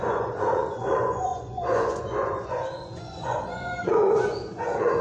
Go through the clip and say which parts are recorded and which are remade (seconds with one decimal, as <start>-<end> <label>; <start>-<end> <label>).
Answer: 0.0-5.0 remade